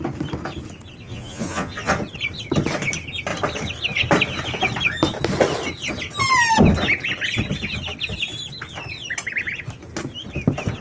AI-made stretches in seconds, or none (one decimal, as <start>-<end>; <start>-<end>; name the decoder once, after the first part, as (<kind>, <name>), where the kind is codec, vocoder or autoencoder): 1.0-1.9 (vocoder, Vocos)